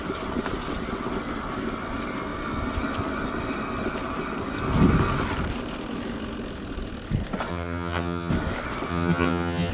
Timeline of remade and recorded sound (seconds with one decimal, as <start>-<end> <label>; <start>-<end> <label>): 0.0-7.5 recorded; 7.5-8.3 remade; 8.3-8.9 recorded; 8.9-9.7 remade